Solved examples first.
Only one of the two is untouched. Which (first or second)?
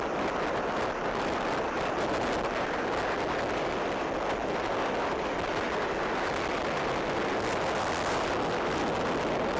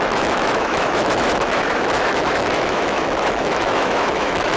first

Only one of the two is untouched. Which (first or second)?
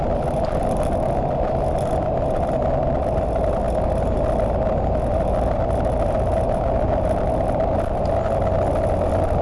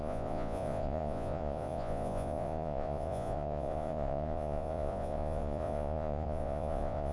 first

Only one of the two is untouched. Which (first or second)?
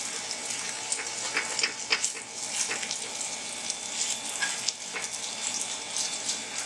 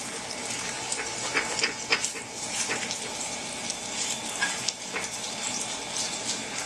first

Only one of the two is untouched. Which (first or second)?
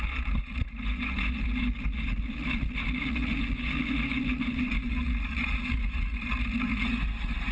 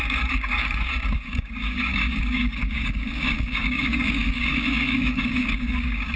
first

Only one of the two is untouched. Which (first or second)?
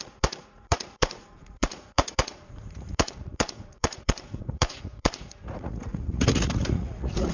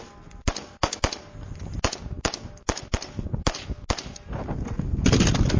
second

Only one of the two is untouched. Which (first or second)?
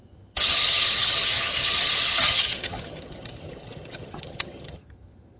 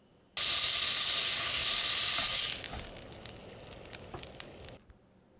second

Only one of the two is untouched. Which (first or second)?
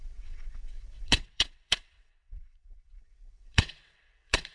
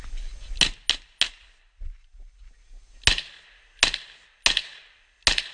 second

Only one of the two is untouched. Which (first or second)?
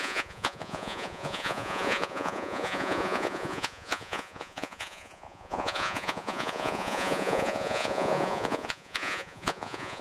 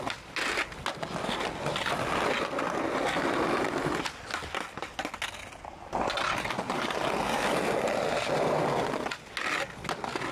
second